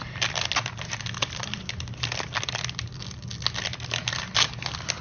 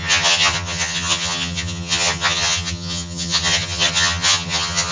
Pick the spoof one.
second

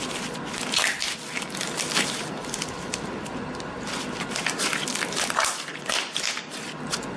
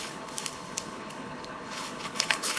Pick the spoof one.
second